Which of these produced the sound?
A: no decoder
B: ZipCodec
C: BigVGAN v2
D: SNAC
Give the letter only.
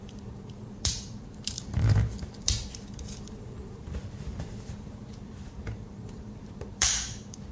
C